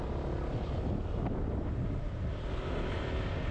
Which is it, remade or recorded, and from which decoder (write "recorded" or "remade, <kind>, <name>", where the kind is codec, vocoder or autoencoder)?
recorded